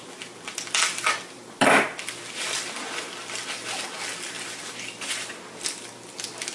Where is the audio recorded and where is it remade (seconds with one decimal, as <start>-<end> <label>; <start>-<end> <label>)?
0.0-6.5 recorded